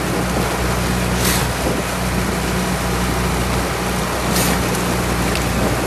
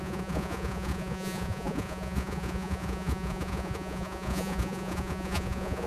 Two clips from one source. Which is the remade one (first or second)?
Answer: second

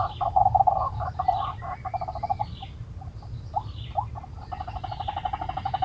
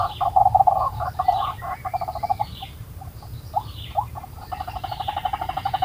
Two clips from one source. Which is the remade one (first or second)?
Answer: second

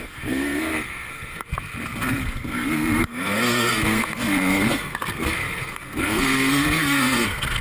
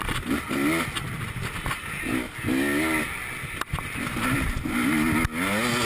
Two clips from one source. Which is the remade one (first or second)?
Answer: first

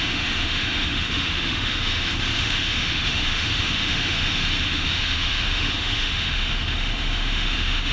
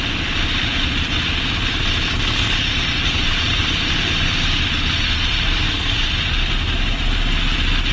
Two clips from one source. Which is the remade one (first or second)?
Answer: first